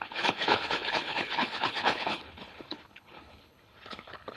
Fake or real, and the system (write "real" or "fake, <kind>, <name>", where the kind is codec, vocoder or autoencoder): fake, codec, HILCodec